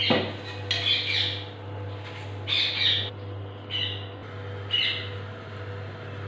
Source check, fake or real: real